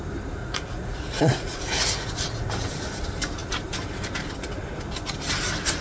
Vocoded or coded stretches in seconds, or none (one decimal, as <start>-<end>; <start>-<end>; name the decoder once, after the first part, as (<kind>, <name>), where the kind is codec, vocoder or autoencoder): 0.4-2.5 (vocoder, Vocos)